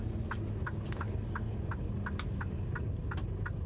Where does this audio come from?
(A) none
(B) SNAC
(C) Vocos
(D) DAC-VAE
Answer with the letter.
A